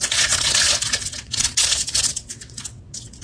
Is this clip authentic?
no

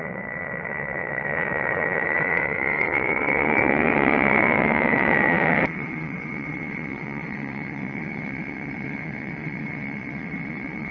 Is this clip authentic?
no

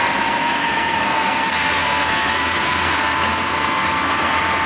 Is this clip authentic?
no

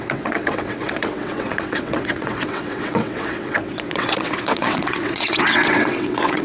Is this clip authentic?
no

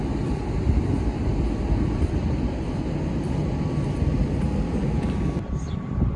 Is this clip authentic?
yes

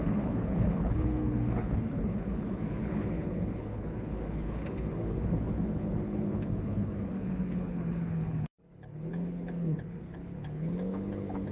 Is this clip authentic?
no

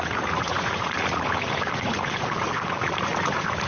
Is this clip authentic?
no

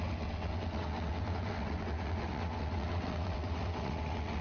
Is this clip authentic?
no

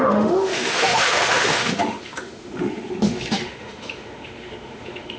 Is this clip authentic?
no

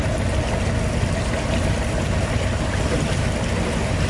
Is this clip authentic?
yes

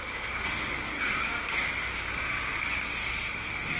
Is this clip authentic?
no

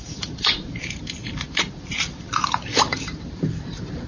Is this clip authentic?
no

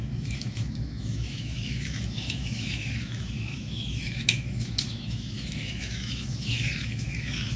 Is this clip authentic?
no